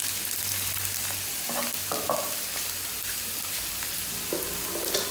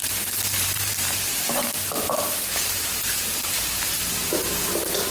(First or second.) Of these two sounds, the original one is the first